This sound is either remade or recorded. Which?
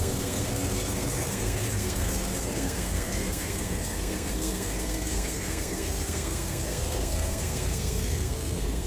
remade